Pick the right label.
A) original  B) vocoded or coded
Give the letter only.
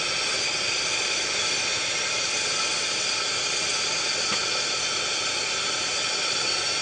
A